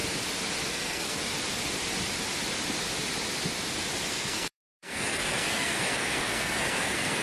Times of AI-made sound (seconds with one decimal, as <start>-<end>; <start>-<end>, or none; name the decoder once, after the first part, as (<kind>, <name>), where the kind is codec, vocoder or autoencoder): 0.7-1.2 (codec, SNAC); 4.1-7.2